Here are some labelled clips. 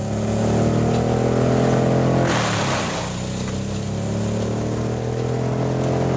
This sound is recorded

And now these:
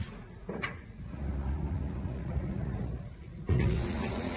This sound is remade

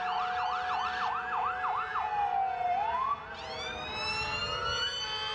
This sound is recorded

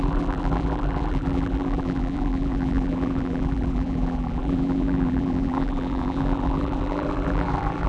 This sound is remade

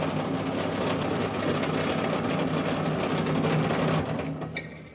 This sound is recorded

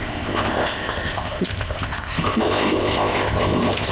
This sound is remade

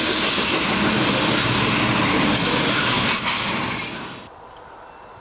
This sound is recorded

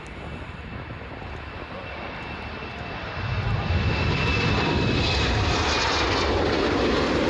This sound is recorded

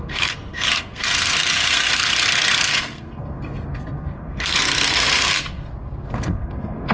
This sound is remade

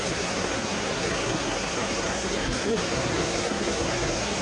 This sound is remade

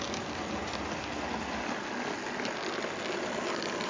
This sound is recorded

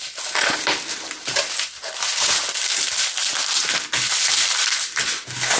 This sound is recorded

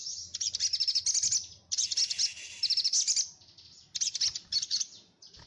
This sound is recorded